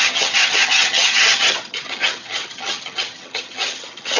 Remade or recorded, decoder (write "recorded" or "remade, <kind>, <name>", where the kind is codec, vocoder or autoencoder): remade, vocoder, HiFi-GAN